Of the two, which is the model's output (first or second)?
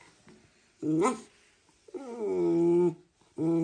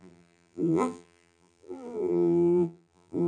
second